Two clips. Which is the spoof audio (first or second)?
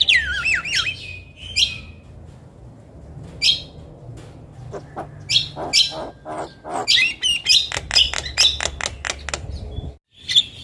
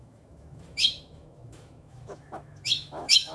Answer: second